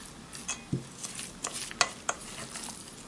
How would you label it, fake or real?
real